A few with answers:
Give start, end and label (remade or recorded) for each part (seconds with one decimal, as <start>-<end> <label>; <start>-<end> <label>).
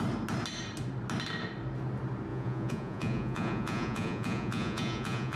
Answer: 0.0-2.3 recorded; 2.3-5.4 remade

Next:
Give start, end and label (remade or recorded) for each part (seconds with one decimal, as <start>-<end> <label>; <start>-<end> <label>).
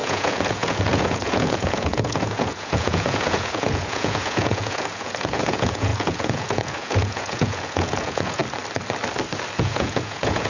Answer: 0.0-8.4 remade; 8.4-9.6 recorded; 9.6-10.5 remade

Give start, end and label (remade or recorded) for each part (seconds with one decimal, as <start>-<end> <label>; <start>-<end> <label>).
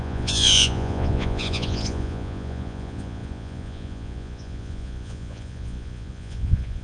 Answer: 0.0-6.8 remade